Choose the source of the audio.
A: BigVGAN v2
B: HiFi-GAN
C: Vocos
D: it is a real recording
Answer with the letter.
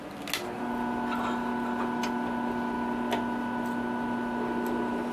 D